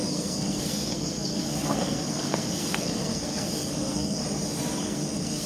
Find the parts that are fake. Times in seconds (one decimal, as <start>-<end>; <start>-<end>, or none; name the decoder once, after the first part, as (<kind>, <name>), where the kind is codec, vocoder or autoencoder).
0.0-4.2 (codec, SNAC); 4.8-5.5